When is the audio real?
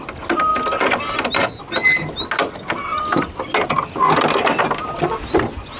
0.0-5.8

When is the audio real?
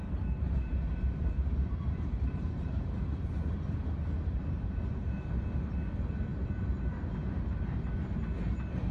5.2-8.9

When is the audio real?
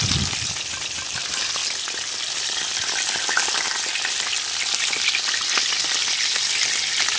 0.0-7.2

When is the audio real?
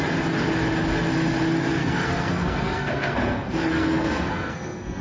0.0-1.7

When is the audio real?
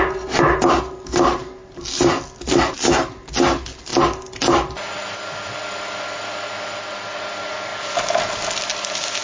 0.0-9.2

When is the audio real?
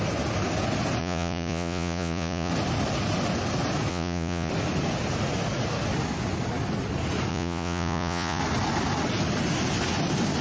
0.0-1.0; 2.5-3.9; 4.5-7.3; 8.4-10.4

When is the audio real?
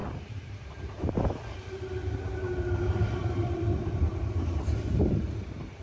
4.1-5.0